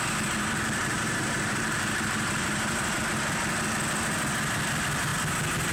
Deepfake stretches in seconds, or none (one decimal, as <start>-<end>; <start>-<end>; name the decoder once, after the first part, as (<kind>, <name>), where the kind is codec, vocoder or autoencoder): 0.8-3.0 (vocoder, BigVGAN v2)